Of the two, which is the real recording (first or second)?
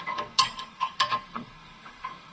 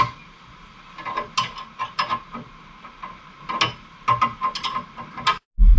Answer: second